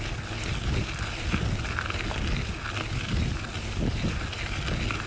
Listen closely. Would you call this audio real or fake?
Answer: real